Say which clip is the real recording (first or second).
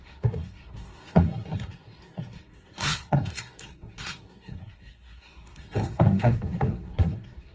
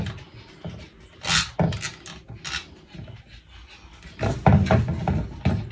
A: second